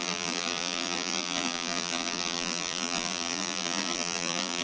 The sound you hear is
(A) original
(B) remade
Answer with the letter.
B